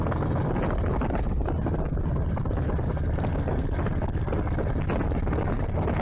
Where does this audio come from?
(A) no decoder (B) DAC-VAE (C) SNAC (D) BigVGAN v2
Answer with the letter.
A